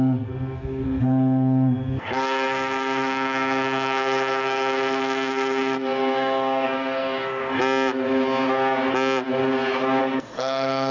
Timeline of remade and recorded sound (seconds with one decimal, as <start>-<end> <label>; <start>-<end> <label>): 0.0-7.4 remade; 7.4-10.0 recorded; 10.0-10.9 remade